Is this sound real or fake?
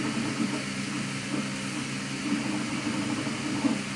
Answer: real